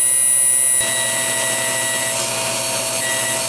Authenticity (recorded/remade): recorded